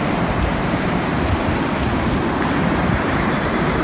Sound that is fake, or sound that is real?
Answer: fake